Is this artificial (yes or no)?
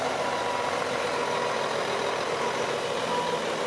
no